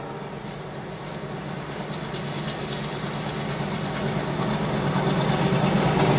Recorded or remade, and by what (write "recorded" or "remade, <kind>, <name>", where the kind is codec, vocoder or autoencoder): recorded